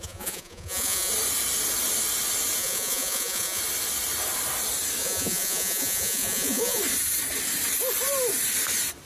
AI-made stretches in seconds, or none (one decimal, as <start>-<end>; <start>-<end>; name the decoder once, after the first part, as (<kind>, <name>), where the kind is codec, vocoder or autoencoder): 0.0-1.1 (vocoder, Vocos); 2.6-3.6; 5.0-6.8